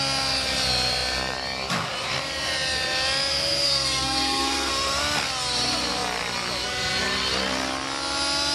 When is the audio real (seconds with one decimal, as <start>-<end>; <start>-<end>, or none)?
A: 0.0-3.3; 4.7-8.5